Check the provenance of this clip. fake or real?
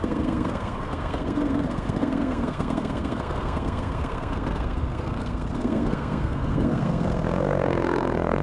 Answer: fake